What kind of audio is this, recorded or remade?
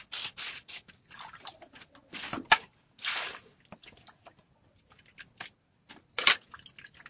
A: recorded